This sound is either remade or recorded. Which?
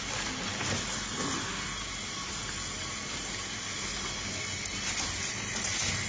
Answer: recorded